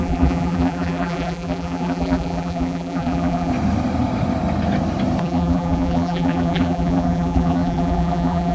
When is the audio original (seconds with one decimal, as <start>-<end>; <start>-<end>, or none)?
3.5-5.2